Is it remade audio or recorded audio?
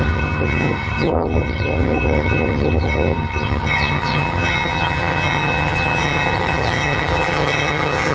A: remade